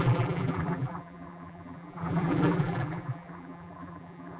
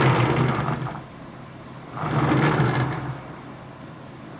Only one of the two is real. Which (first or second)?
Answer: second